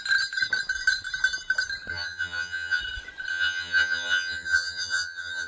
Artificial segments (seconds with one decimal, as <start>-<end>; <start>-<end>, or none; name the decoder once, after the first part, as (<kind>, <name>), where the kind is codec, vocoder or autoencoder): 1.9-2.8 (vocoder, HiFi-GAN); 3.3-5.5